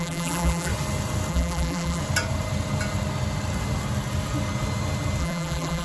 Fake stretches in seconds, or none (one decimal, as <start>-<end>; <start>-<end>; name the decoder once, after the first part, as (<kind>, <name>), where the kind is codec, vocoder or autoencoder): 0.0-0.7 (vocoder, BigVGAN v2); 1.3-2.0; 5.2-5.8

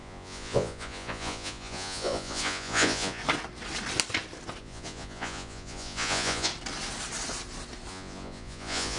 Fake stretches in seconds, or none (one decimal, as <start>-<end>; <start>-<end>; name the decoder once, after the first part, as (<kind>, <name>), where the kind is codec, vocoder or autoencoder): 0.0-3.2 (vocoder, Vocos); 4.6-6.5; 7.9-9.0

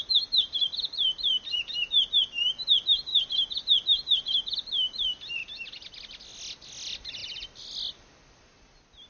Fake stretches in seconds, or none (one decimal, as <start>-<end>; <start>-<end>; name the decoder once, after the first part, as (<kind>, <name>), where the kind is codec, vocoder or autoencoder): none

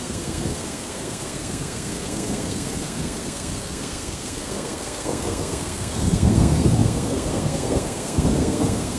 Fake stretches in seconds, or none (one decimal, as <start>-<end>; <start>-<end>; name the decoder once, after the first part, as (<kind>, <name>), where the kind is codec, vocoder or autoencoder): 0.0-9.0 (codec, SNAC)

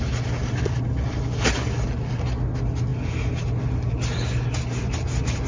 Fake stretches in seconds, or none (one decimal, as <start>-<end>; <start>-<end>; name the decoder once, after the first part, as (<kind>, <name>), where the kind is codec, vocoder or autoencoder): none

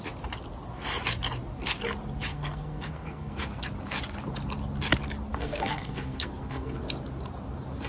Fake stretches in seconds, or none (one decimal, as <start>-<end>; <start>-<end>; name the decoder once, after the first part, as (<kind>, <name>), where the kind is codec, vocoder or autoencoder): 2.3-3.6 (codec, SNAC); 5.3-6.8

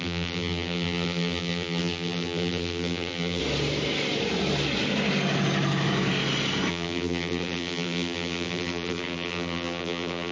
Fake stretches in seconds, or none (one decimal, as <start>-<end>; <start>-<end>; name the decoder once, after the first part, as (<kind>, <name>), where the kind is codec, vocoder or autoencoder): 0.0-3.4 (vocoder, BigVGAN v2); 6.7-10.3